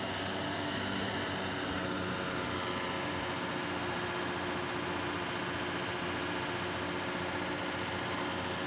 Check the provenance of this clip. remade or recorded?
recorded